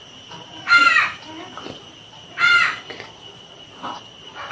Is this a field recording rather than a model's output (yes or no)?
yes